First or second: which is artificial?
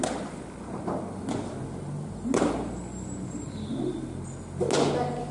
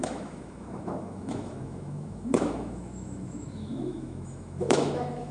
second